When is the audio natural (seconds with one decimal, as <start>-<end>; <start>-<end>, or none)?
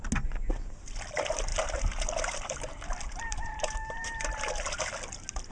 0.0-1.5; 4.5-5.5